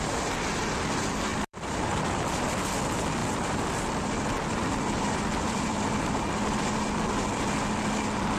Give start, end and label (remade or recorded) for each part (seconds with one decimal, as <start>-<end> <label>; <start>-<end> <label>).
0.0-1.3 recorded; 1.3-2.3 remade; 2.3-3.2 recorded; 3.2-6.8 remade; 6.8-8.4 recorded